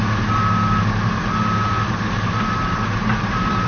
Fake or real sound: real